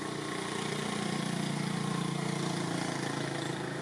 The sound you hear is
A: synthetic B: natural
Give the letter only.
B